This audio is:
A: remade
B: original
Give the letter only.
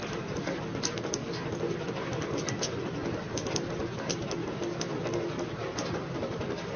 B